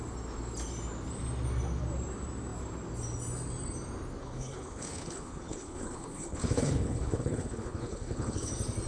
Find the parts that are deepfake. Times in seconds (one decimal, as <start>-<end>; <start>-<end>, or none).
4.2-8.5